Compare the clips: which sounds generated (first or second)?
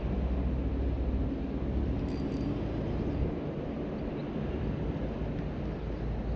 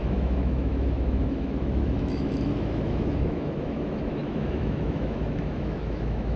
second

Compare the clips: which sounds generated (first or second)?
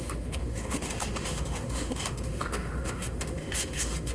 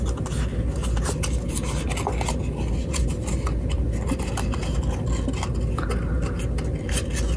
first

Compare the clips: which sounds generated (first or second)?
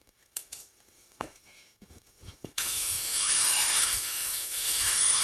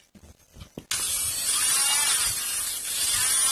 first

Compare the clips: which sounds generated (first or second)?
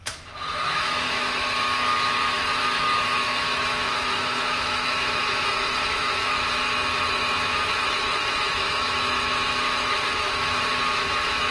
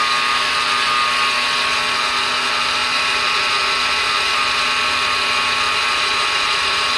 first